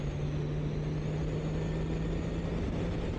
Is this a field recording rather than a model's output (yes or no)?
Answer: yes